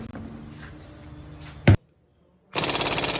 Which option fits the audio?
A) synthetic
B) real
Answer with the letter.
B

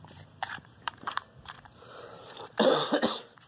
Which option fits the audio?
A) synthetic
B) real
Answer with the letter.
A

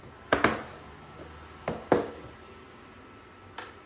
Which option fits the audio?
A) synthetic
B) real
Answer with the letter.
B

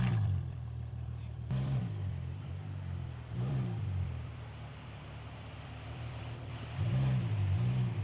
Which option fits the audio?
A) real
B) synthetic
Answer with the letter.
B